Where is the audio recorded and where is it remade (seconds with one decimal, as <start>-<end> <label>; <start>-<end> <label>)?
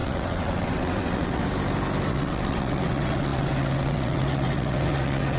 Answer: 0.0-1.4 remade; 1.4-2.1 recorded; 2.1-5.4 remade